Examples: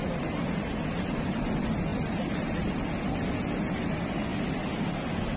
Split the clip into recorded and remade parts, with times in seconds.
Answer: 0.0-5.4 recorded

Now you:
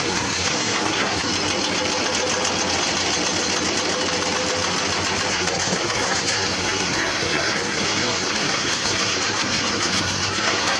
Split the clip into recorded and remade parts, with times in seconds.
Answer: 0.0-1.3 remade; 1.3-5.3 recorded; 5.3-10.8 remade

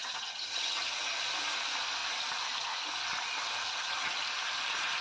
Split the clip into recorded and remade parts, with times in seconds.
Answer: 0.0-1.2 remade; 1.2-3.6 recorded; 3.6-4.2 remade; 4.2-5.0 recorded